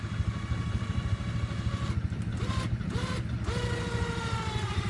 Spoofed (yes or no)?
no